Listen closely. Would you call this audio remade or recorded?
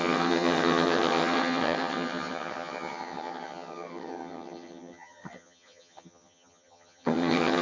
remade